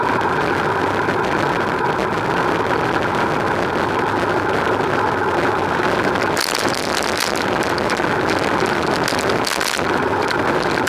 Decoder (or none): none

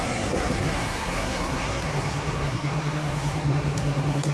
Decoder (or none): codec, SNAC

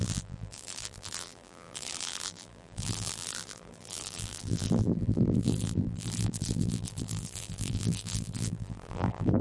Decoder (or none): vocoder, BigVGAN v2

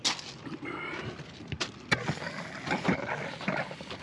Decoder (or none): none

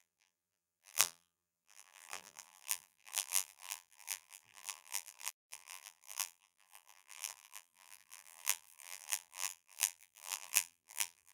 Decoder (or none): vocoder, BigVGAN v2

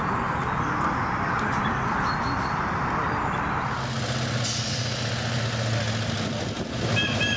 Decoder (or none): none